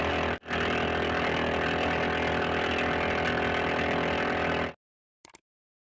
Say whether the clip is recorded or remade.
recorded